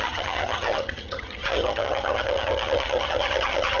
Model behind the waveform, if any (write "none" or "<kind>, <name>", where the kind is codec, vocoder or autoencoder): vocoder, HiFi-GAN